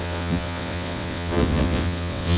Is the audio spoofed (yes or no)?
yes